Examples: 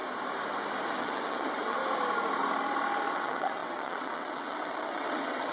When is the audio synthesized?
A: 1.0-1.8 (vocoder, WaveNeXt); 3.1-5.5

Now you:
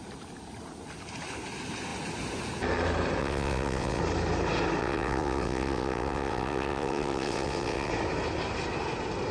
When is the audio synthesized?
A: 3.2-4.0 (vocoder, WaveNeXt); 4.8-7.9

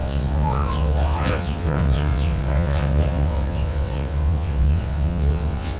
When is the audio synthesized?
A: 0.0-5.8 (vocoder, WaveNeXt)

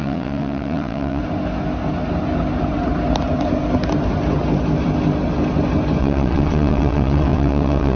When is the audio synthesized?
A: 0.0-1.2 (vocoder, WaveNeXt); 6.0-8.0

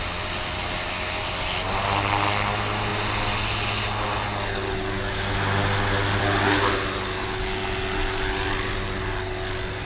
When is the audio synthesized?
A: none

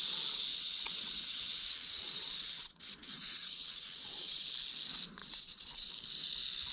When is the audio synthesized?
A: 0.5-4.5 (vocoder, WaveNeXt); 5.2-5.9

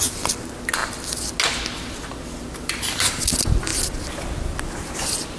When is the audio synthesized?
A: none

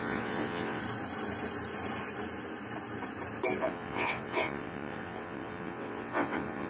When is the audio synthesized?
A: 0.0-0.8 (vocoder, WaveNeXt); 3.6-6.7